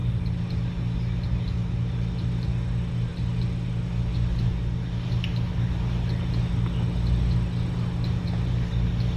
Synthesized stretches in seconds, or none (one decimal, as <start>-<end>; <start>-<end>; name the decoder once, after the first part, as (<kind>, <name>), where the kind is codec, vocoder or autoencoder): none

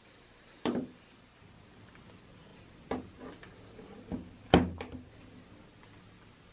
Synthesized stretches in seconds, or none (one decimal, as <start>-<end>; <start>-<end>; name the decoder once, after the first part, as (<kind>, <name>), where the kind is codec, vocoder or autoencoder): 0.0-1.5 (vocoder, BigVGAN v2); 2.5-5.3

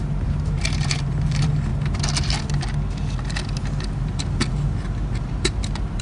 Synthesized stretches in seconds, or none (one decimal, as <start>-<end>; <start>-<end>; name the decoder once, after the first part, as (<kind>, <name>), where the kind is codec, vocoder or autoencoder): 0.0-1.7 (vocoder, BigVGAN v2); 5.2-6.0

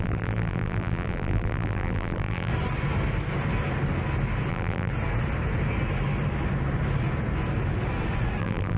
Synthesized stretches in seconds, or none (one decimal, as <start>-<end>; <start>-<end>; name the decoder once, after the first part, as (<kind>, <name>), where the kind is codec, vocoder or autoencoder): 0.0-2.5 (vocoder, BigVGAN v2); 4.5-4.9; 8.4-8.8

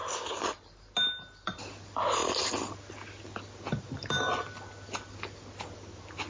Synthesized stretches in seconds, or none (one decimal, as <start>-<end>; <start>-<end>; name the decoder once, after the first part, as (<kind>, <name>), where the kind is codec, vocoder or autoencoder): none

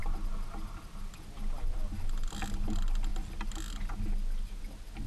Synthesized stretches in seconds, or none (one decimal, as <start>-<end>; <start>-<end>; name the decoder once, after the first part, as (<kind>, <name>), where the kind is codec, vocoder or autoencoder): none

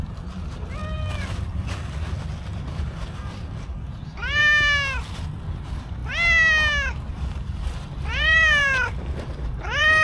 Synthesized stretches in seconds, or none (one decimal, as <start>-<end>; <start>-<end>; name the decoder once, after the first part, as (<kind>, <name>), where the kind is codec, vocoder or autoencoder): 0.0-0.8 (vocoder, BigVGAN v2); 2.7-4.4; 5.5-6.0; 7.1-10.0

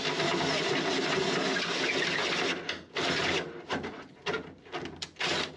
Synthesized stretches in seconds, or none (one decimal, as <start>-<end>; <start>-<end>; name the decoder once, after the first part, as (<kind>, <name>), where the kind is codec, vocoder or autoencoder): none